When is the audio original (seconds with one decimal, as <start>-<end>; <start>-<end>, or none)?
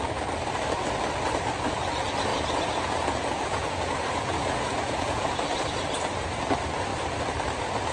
0.0-2.3; 5.5-7.9